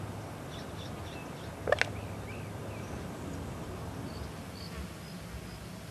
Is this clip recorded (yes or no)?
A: yes